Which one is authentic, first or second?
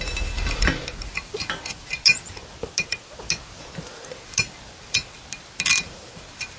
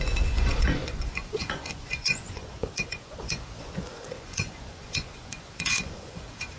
first